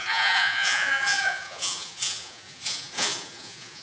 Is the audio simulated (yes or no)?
yes